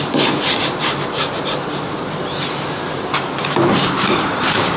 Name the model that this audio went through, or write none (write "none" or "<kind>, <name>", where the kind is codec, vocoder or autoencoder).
vocoder, BigVGAN v2